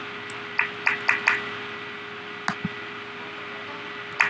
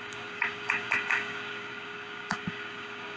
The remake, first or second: second